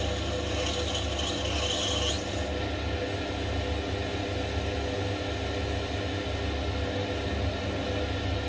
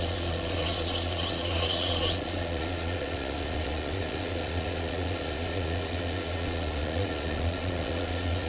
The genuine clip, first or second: first